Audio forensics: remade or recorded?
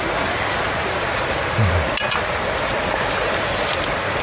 recorded